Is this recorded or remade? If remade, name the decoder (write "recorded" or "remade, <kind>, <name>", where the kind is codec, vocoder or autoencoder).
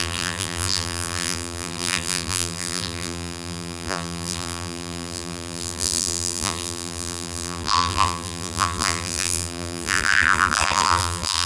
remade, vocoder, BigVGAN v2